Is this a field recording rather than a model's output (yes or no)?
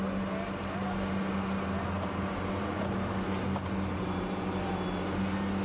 yes